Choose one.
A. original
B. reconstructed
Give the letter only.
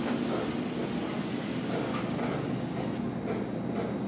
A